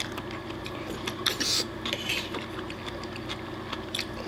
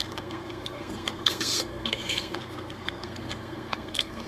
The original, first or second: first